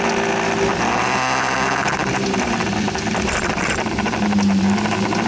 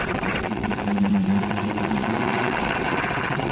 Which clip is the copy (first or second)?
second